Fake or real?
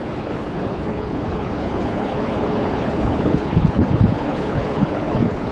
fake